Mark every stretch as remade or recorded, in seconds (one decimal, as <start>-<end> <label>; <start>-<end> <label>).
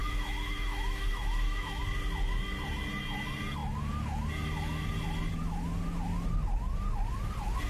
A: 0.0-1.8 remade; 1.8-7.7 recorded